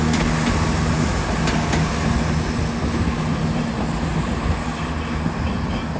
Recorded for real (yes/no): yes